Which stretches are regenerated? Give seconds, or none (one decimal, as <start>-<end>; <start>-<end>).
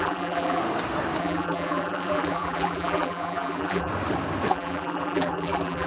0.0-0.6; 1.2-3.9; 4.5-5.9